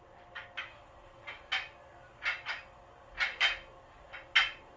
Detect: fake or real real